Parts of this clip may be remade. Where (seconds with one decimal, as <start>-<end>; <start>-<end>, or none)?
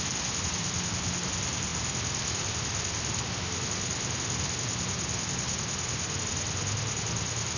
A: none